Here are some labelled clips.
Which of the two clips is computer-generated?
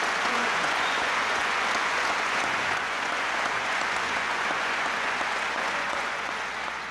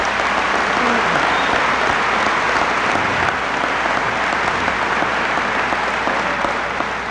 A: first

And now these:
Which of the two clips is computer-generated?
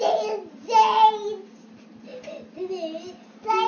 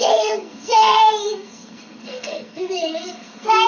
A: second